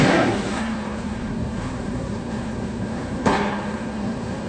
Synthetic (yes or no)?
yes